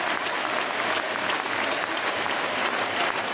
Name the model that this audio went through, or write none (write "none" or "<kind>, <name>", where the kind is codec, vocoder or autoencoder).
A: none